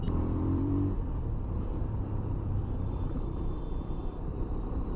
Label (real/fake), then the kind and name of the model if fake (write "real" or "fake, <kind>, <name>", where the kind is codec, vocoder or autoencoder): fake, vocoder, BigVGAN v2